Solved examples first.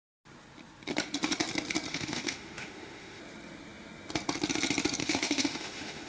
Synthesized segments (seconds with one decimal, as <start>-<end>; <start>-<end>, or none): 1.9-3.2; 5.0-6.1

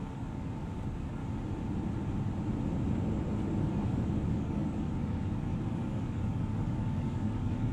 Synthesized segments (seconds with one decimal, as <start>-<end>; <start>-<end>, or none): 0.0-1.2; 3.6-7.7

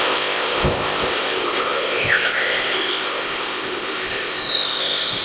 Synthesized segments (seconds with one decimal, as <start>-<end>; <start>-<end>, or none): 0.0-5.2

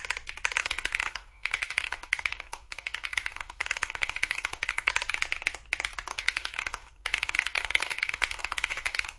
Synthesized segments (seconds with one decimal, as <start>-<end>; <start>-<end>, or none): 0.6-4.9; 6.1-9.2

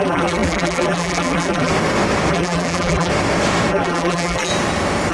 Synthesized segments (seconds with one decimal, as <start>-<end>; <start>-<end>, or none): 0.0-1.7; 2.3-3.1; 3.7-4.5

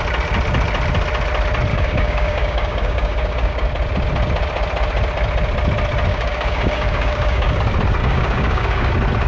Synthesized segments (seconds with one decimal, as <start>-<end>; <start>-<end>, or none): 1.7-3.7; 6.1-7.6; 8.0-8.9

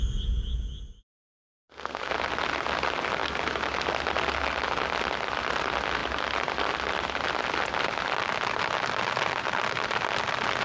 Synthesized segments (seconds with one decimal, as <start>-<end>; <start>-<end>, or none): 1.4-2.1

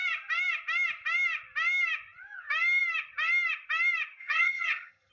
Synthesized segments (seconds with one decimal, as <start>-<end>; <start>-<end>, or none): 4.2-5.1